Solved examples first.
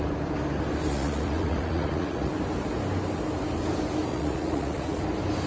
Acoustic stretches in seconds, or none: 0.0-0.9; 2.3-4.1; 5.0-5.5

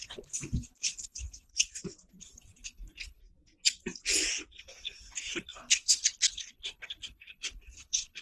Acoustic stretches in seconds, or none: 1.5-2.1; 3.2-4.6

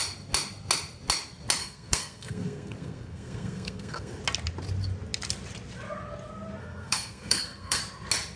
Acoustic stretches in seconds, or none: 0.0-1.6; 4.2-6.6; 7.8-8.4

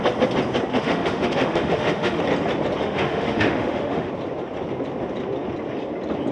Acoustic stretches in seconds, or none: 0.0-0.7; 2.2-2.8; 4.1-6.3

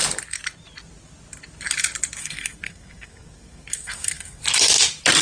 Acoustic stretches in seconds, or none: 0.0-2.2; 4.4-5.2

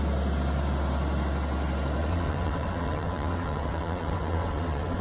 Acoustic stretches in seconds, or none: 0.0-2.0